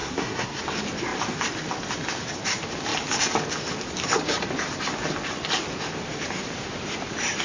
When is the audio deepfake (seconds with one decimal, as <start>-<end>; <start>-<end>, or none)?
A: 0.0-0.6